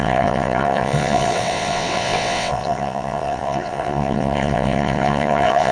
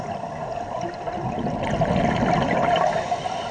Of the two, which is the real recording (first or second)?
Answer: second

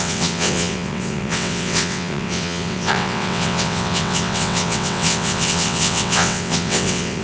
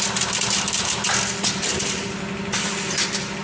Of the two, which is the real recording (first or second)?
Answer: second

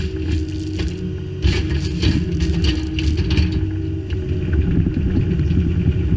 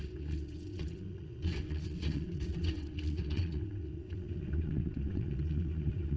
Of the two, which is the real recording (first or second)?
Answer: first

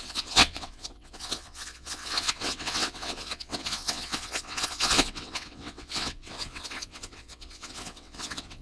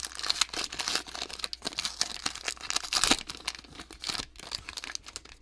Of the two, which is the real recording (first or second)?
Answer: second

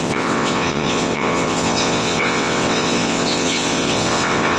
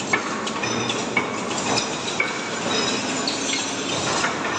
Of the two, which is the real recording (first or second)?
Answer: second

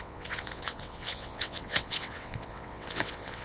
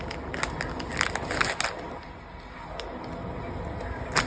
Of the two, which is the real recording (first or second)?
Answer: second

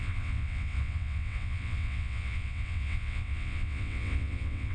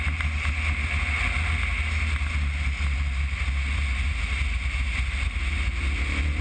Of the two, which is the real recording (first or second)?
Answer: second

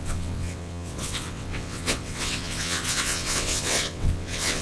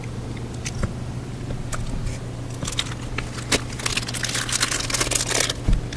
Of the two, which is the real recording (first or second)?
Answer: second